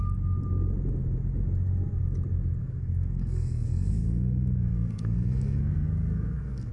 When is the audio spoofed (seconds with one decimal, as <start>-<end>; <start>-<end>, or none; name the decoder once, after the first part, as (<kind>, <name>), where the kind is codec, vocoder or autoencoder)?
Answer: 2.6-6.7 (codec, SNAC)